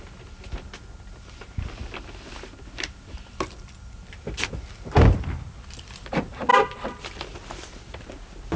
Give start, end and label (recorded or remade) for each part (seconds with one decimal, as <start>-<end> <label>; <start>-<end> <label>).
0.0-8.6 recorded